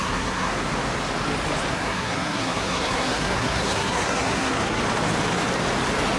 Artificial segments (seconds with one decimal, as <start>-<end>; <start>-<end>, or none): 0.0-0.5; 1.7-4.8